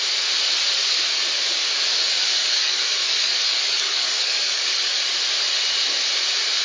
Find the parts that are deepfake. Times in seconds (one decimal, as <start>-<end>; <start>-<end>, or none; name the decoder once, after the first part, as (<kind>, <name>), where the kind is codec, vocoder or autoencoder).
2.4-5.0 (codec, DAC)